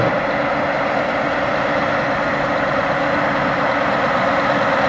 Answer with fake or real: real